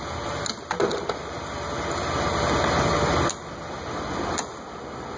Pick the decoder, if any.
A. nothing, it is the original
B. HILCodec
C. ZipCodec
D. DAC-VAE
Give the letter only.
A